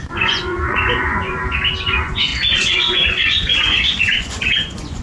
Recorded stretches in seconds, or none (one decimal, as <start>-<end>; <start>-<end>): 1.4-1.9

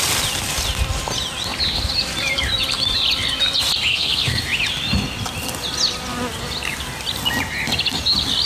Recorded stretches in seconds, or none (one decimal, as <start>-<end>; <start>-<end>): 0.0-3.9; 4.4-8.5

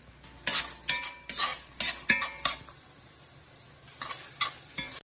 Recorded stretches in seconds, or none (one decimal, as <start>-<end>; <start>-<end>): 0.0-5.0